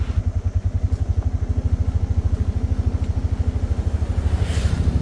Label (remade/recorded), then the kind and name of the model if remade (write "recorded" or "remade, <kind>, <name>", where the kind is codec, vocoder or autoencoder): recorded